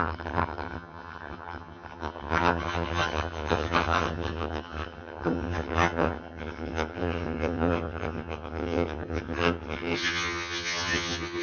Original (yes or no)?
no